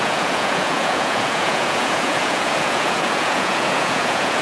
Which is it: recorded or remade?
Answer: remade